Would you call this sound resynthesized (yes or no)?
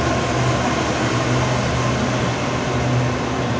no